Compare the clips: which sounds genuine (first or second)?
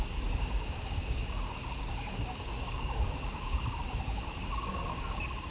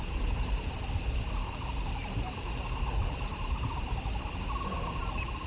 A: second